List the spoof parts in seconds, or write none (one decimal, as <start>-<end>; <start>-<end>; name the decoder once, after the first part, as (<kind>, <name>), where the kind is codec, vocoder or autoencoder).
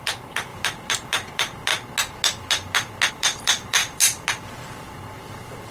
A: 0.0-1.7 (vocoder, BigVGAN v2); 3.1-5.7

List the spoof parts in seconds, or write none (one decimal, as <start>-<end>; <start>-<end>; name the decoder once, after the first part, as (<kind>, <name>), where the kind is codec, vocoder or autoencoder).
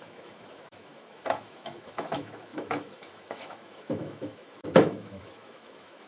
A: 0.0-6.1 (autoencoder, DAC-VAE)